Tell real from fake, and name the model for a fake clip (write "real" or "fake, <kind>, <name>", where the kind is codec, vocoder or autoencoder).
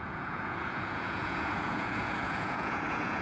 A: fake, vocoder, Vocos